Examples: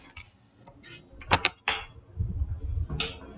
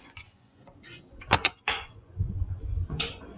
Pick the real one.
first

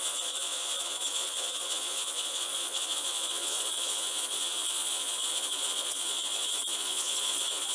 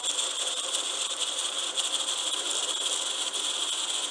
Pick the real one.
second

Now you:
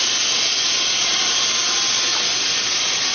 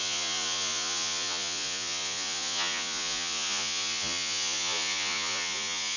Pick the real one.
first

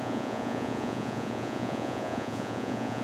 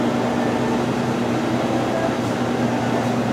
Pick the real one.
second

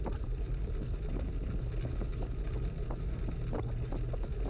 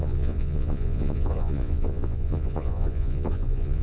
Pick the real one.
first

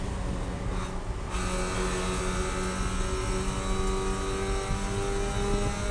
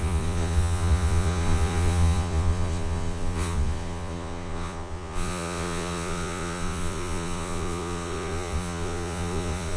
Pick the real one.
first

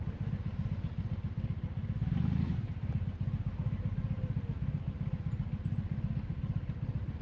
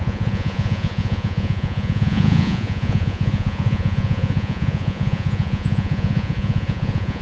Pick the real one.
first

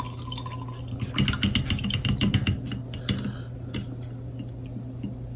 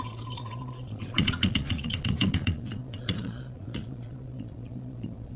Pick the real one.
first